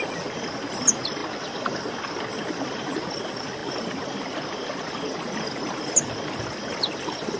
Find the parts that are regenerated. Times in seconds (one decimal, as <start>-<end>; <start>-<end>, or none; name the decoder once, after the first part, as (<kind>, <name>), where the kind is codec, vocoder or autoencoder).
none